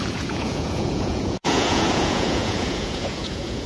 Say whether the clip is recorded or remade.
remade